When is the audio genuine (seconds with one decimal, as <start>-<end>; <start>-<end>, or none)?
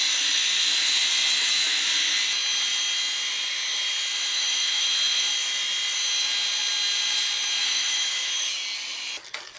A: 0.0-4.3; 5.2-7.6; 8.5-9.6